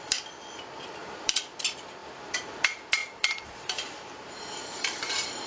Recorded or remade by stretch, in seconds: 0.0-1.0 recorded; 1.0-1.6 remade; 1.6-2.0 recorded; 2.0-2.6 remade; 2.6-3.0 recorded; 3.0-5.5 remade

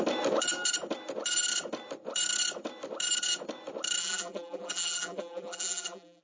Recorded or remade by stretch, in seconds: 0.0-4.0 recorded; 4.0-6.2 remade

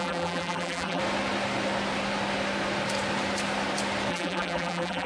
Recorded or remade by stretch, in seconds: 0.0-1.0 remade; 1.0-4.1 recorded; 4.1-5.1 remade

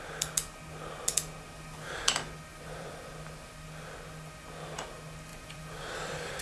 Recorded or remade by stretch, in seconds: 0.0-2.5 recorded; 2.5-3.1 remade; 3.1-5.3 recorded; 5.3-6.4 remade

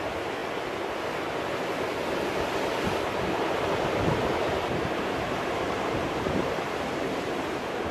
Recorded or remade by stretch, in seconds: 0.0-0.4 remade; 0.4-4.7 recorded; 4.7-7.9 remade

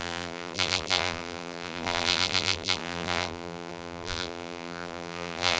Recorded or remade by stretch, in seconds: 0.0-5.6 remade